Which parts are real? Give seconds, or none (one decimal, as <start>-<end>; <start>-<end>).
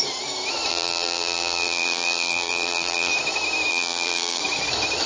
0.0-0.7; 3.1-3.7; 4.4-5.1